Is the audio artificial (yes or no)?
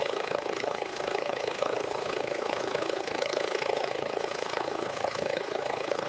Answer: yes